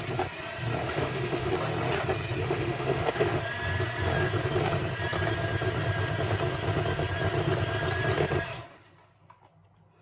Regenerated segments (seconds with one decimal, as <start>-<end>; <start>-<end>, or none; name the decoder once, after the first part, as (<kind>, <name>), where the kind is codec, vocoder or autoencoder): 0.8-1.5 (autoencoder, DAC-VAE); 2.4-3.4